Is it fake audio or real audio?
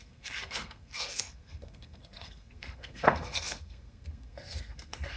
fake